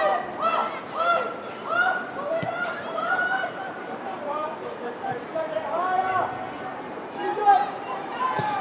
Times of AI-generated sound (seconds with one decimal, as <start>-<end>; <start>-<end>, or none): 2.6-5.3; 6.7-8.6